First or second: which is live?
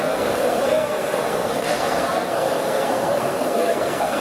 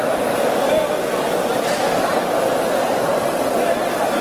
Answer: second